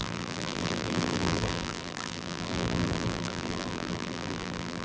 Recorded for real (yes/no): no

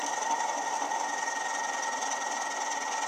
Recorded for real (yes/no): yes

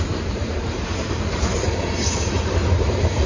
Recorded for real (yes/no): no